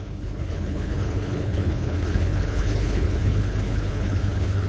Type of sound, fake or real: fake